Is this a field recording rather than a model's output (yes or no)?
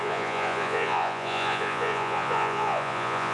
no